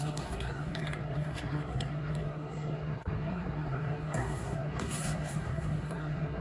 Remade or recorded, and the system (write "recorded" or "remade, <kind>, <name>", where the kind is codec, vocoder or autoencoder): remade, codec, SNAC